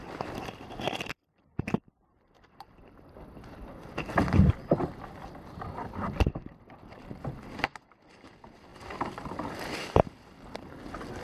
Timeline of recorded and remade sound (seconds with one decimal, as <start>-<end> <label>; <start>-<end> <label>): 0.0-11.2 recorded